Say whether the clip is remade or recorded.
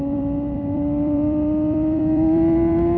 remade